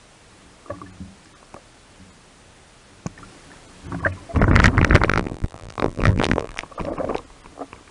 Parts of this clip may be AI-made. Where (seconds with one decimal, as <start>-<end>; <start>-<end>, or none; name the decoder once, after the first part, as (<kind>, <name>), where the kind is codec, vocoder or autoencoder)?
5.1-6.6 (vocoder, BigVGAN v2)